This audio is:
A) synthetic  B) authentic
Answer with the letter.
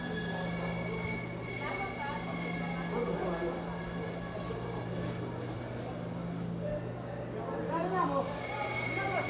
B